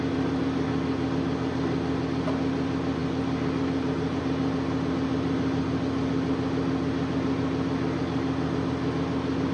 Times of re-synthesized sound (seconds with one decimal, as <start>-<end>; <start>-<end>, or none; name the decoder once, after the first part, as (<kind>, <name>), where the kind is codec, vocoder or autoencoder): none